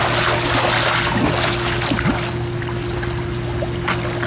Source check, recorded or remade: recorded